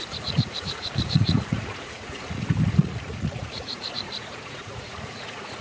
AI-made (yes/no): yes